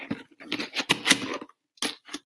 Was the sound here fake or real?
real